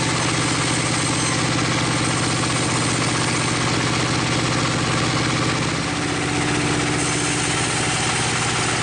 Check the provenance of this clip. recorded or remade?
recorded